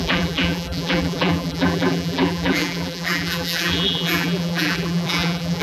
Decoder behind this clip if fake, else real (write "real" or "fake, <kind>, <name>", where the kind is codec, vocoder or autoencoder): fake, vocoder, BigVGAN v2